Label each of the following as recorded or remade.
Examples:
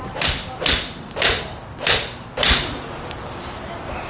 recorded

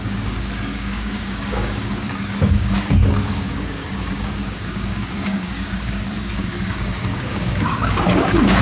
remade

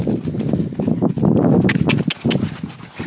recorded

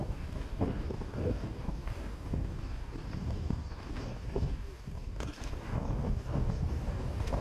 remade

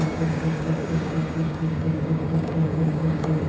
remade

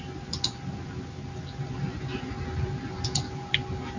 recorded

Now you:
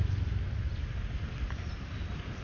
recorded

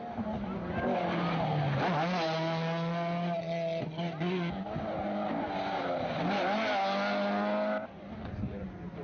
recorded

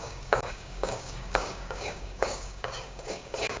remade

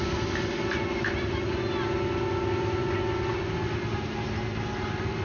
recorded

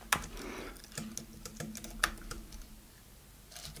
recorded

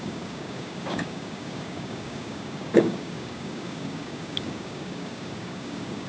remade